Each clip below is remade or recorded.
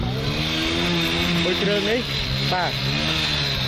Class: recorded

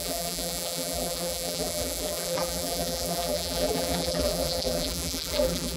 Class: remade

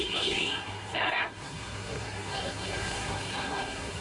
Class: remade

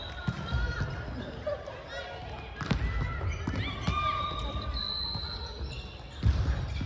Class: recorded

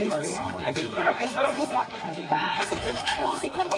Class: remade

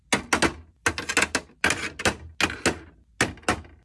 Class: recorded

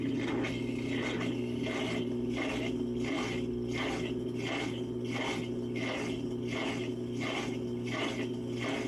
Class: recorded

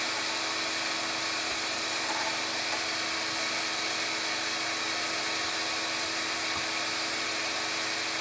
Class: recorded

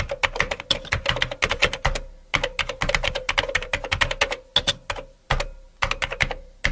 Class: recorded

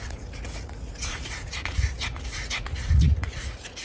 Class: remade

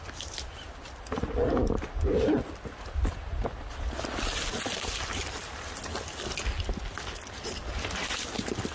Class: recorded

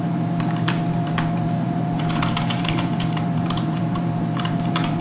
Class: remade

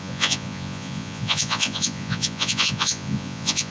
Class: remade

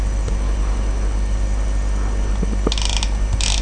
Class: recorded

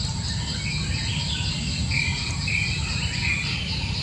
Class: recorded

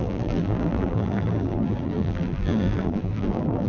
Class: remade